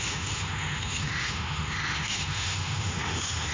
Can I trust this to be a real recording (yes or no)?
no